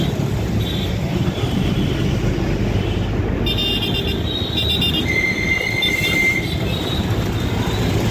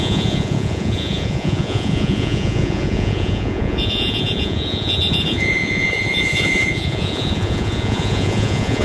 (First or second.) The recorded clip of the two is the first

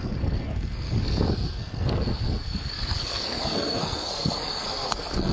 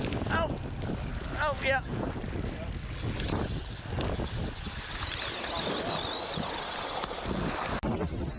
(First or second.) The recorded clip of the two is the second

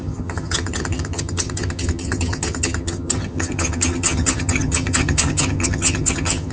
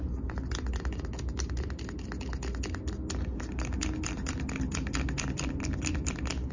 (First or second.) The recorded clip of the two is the second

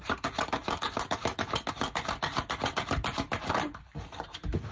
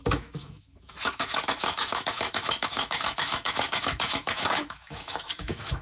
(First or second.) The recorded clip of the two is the first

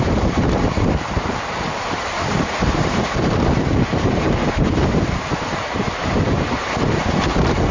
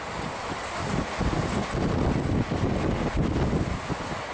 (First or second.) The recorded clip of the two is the second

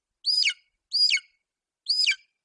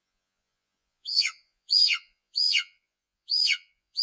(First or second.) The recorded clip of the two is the first